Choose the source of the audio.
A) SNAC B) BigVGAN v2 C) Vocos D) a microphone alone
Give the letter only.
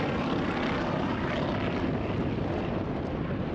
D